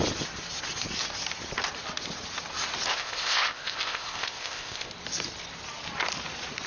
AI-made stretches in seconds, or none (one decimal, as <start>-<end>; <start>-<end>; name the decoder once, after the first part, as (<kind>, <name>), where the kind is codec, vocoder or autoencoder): 2.9-4.9 (codec, ZipCodec)